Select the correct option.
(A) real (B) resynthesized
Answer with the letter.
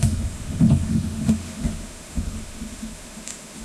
B